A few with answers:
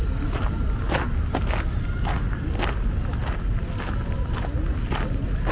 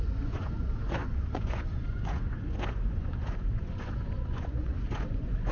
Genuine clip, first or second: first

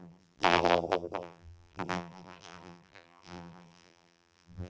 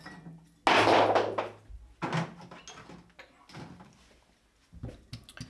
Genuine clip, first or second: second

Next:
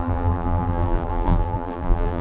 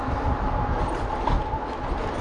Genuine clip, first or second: second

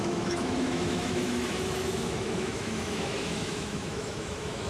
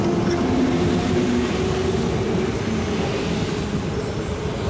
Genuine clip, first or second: second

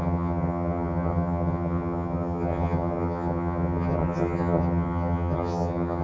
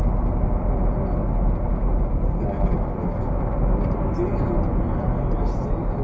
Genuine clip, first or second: second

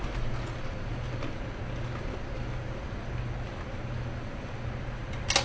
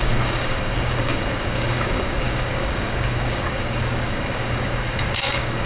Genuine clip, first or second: first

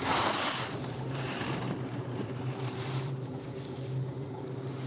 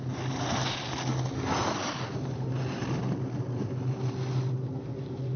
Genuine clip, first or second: second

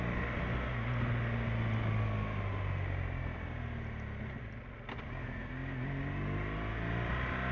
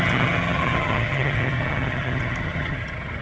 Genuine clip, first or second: first